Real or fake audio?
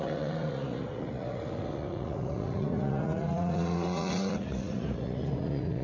fake